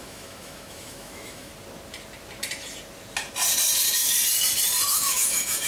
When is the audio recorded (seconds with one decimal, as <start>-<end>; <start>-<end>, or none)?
1.5-4.9